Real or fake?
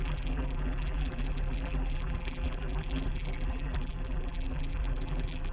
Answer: fake